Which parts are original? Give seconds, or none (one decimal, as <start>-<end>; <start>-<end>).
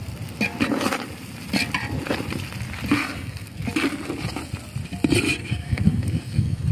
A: 0.0-3.0; 3.6-5.4